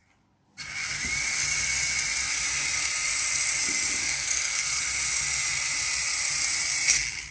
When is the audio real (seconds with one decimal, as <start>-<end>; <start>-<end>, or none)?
0.0-4.0; 4.8-7.3